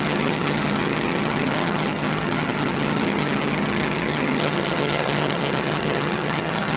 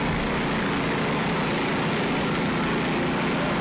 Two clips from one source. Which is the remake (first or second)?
first